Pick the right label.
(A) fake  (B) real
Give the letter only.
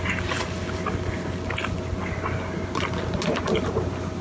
B